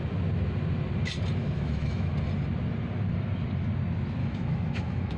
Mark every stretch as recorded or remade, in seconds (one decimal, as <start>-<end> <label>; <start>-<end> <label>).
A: 0.0-1.4 recorded; 1.4-2.1 remade; 2.1-4.2 recorded; 4.2-5.2 remade